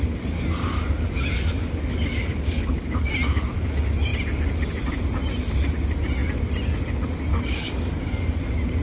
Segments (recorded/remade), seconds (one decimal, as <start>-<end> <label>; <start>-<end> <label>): 0.0-0.6 recorded; 0.6-3.1 remade; 3.1-7.3 recorded; 7.3-8.4 remade; 8.4-8.8 recorded